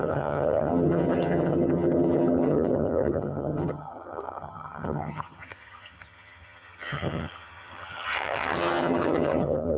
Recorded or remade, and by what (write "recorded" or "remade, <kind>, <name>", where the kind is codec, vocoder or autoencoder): remade, vocoder, HiFi-GAN